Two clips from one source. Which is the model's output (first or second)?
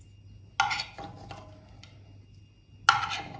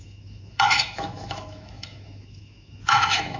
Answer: second